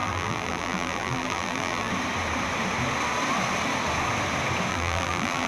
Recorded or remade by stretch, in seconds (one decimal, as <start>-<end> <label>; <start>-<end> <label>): 0.0-1.9 remade; 1.9-4.7 recorded; 4.7-5.5 remade